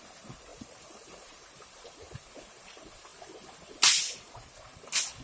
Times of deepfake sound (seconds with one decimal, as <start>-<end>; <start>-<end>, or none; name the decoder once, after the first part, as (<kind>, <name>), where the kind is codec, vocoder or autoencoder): 0.5-1.4 (vocoder, BigVGAN v2)